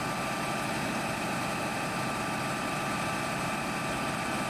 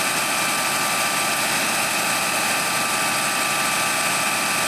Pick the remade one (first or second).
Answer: first